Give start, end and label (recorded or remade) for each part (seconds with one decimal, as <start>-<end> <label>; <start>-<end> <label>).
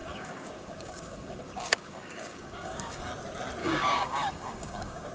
0.0-3.1 remade; 3.1-3.6 recorded; 3.6-5.1 remade